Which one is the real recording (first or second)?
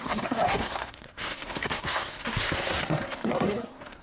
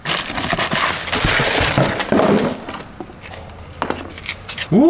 second